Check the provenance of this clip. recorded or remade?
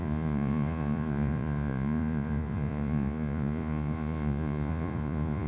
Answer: remade